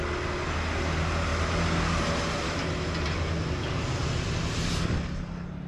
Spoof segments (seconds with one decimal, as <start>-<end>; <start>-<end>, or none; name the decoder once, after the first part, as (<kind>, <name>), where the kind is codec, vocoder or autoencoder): none